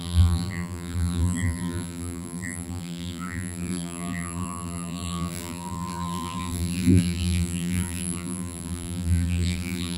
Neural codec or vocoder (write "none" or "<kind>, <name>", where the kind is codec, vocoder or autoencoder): vocoder, BigVGAN v2